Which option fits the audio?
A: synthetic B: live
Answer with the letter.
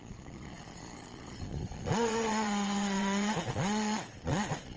A